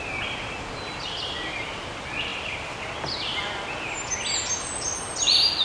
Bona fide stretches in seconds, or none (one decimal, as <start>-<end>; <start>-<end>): 0.0-5.6